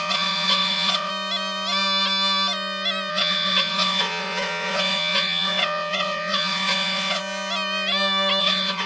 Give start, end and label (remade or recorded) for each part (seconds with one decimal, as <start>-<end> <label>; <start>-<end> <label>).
0.0-1.1 remade; 1.1-3.1 recorded; 3.1-7.2 remade; 7.2-8.4 recorded; 8.4-8.9 remade